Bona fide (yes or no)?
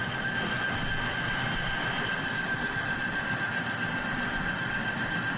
yes